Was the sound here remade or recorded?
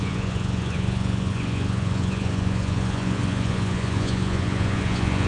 remade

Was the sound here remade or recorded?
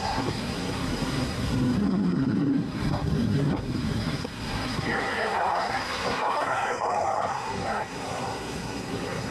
remade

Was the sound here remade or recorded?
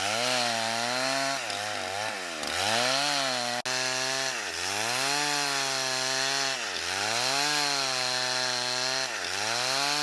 recorded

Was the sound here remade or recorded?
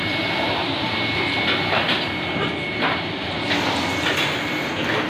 recorded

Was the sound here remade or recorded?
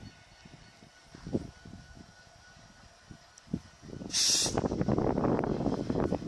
recorded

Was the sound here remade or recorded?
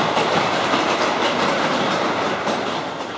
remade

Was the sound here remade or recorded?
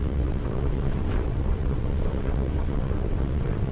remade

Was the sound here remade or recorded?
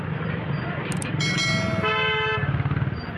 recorded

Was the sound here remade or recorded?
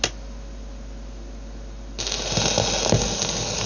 recorded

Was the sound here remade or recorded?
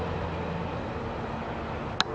recorded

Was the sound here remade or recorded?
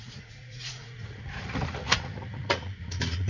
remade